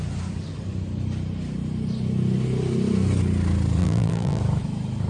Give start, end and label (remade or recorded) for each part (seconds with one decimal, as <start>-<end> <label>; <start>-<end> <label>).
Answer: 0.0-3.8 recorded; 3.8-4.4 remade; 4.4-5.1 recorded